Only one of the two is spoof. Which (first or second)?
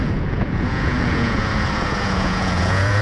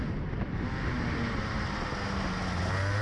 first